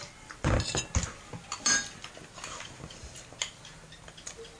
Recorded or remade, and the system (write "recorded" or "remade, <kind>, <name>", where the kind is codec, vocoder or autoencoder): recorded